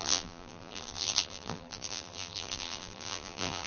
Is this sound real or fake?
fake